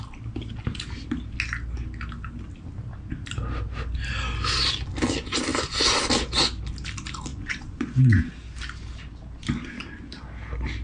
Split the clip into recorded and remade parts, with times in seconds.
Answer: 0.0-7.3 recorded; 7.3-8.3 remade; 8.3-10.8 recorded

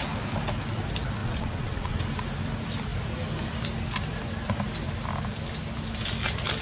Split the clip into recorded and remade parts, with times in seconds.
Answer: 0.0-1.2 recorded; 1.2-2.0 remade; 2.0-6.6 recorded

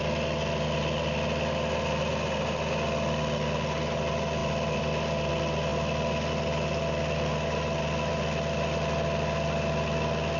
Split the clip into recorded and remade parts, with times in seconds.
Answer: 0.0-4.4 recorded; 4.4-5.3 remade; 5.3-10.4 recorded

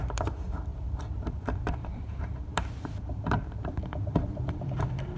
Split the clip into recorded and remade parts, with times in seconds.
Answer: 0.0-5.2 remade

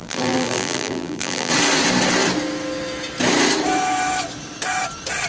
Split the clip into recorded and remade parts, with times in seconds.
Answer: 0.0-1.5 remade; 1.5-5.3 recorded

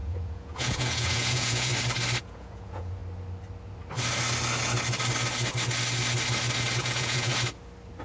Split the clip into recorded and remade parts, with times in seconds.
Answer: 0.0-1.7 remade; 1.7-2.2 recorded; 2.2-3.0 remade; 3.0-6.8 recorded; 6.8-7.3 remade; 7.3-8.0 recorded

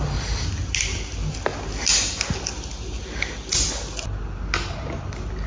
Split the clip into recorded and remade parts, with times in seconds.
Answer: 0.0-5.5 recorded